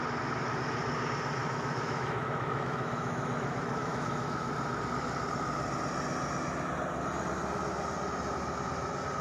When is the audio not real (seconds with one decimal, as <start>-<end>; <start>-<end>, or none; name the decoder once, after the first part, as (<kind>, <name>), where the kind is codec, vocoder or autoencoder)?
1.4-4.5 (autoencoder, DAC-VAE)